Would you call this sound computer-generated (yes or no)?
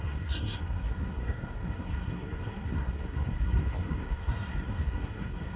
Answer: yes